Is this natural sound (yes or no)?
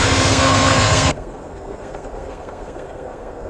no